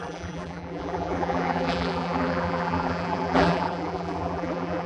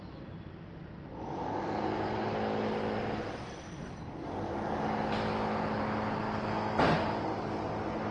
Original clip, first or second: second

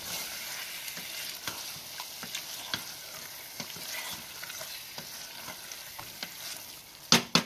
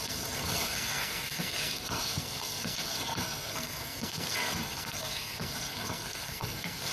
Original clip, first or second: first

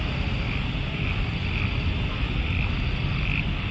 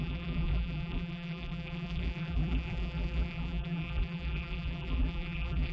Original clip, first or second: first